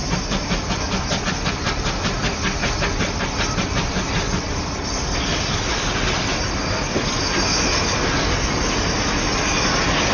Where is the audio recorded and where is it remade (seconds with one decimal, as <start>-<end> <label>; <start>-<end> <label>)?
0.0-10.1 recorded